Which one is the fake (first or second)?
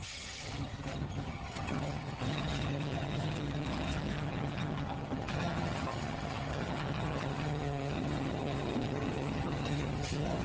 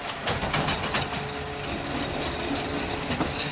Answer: first